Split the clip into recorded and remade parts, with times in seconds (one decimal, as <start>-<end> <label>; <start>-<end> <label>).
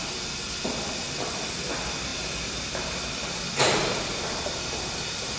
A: 0.0-5.4 recorded